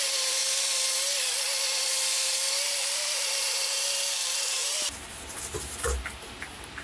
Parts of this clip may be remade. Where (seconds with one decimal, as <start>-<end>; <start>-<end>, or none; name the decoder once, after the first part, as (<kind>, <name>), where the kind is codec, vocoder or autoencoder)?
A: 0.0-0.4 (vocoder, BigVGAN v2); 1.9-6.8